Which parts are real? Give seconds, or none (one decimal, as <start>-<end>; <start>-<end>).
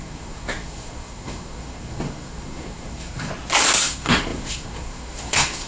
3.3-3.8